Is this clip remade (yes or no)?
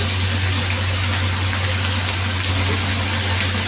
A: no